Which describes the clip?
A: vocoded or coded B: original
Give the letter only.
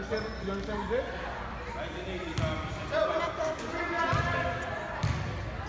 B